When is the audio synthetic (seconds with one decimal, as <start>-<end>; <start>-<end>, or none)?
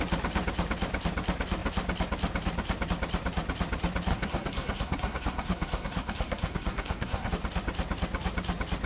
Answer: 4.1-7.3